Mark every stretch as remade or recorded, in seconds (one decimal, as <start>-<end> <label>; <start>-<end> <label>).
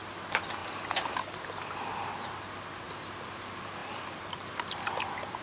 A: 0.0-5.4 recorded